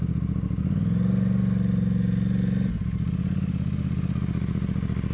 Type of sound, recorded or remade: recorded